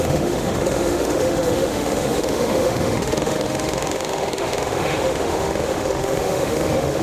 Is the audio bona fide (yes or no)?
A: no